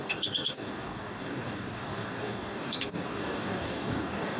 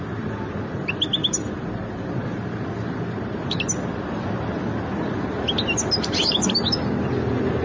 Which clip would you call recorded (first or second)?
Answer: second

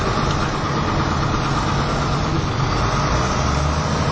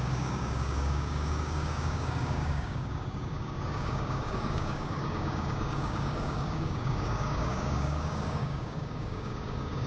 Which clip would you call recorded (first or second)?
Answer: first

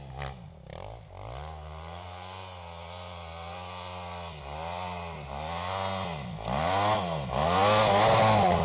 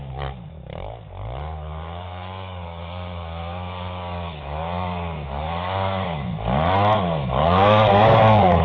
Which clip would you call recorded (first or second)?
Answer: first